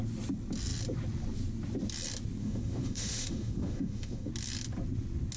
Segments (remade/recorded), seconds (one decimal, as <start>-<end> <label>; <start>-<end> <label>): 0.0-2.4 recorded; 2.4-4.3 remade; 4.3-5.4 recorded